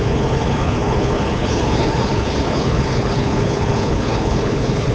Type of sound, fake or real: fake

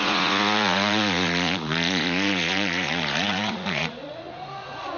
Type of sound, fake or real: fake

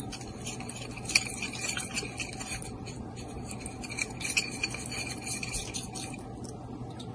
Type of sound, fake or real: real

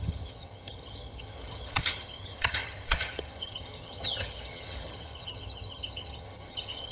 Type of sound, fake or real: fake